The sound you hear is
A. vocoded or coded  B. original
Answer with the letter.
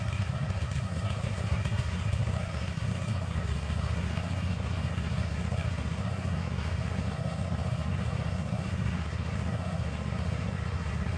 A